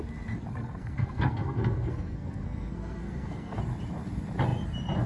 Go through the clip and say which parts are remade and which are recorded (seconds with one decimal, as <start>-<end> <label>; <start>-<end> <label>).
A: 0.0-0.5 recorded; 0.5-3.6 remade; 3.6-5.1 recorded

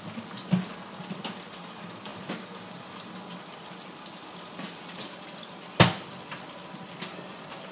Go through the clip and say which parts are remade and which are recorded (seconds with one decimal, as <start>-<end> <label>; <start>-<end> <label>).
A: 0.0-7.7 recorded

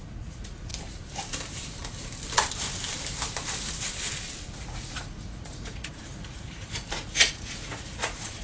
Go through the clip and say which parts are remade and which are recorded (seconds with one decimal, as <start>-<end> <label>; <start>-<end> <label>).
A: 0.0-0.7 remade; 0.7-4.5 recorded; 4.5-8.4 remade

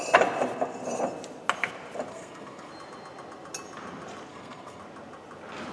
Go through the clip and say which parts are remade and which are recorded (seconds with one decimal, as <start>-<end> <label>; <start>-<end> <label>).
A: 0.0-2.1 recorded; 2.1-2.7 remade; 2.7-4.3 recorded; 4.3-4.8 remade; 4.8-5.7 recorded